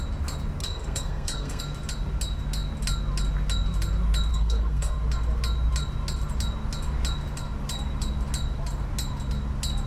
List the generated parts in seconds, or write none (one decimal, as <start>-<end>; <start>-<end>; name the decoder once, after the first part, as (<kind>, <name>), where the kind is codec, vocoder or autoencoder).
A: 0.6-1.6 (codec, SNAC); 4.3-5.0